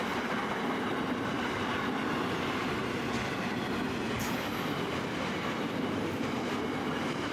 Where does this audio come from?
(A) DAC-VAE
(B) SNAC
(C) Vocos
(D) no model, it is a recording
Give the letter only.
D